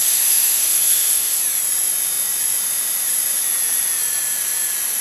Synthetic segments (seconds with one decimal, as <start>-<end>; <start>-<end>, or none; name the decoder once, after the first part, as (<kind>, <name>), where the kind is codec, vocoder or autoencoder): 0.0-1.4 (autoencoder, DAC-VAE)